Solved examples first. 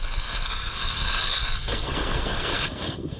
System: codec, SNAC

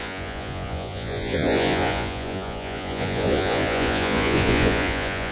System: vocoder, Vocos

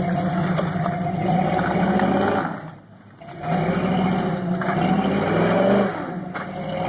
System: none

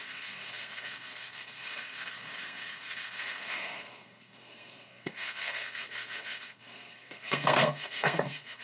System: codec, SNAC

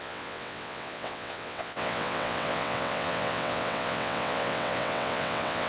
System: vocoder, WaveNeXt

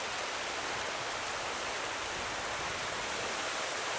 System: none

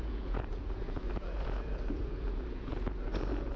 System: vocoder, Vocos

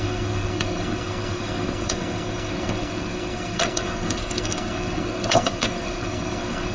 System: codec, SNAC